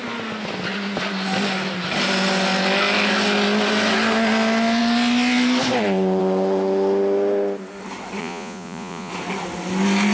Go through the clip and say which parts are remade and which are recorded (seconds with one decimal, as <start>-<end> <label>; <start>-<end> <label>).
0.0-8.2 recorded; 8.2-9.1 remade; 9.1-10.1 recorded